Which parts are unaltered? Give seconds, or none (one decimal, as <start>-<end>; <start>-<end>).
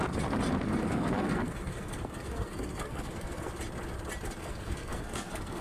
0.0-0.8; 3.5-4.4